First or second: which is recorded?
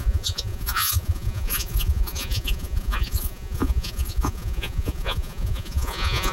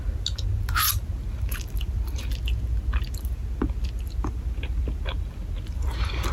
second